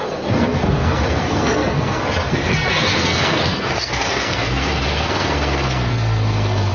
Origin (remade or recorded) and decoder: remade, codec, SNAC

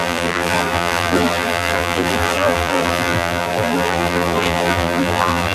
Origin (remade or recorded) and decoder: remade, vocoder, BigVGAN v2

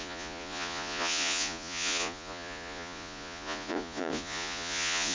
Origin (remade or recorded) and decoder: remade, vocoder, Vocos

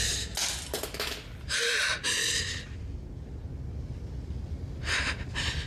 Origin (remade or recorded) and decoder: recorded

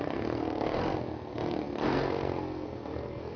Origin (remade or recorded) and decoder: remade, codec, SNAC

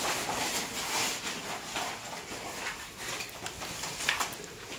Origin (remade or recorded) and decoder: recorded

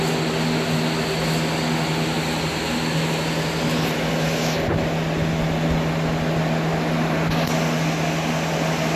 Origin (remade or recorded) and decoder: recorded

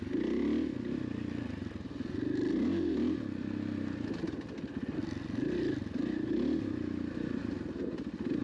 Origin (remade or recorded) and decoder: recorded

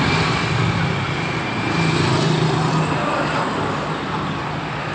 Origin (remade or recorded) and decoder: recorded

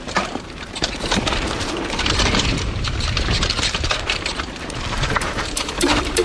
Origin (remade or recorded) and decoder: remade, vocoder, BigVGAN v2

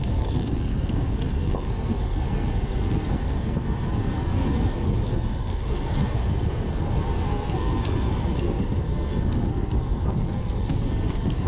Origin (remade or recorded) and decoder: remade, codec, SNAC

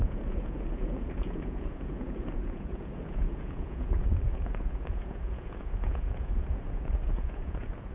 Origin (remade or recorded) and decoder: remade, vocoder, Vocos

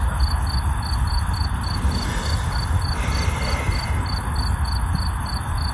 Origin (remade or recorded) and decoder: recorded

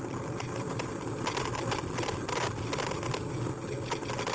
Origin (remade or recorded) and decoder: recorded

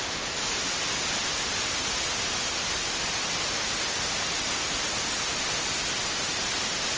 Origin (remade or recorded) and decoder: recorded